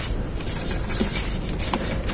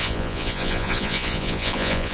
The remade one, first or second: second